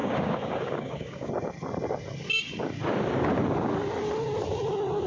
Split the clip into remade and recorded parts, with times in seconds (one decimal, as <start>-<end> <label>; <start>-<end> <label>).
0.0-1.3 remade; 1.3-5.1 recorded